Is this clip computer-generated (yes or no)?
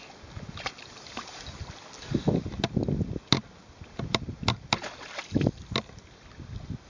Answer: no